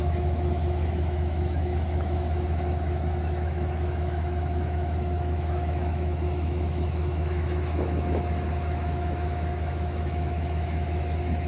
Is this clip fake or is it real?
fake